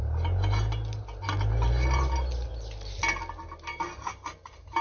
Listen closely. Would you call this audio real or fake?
real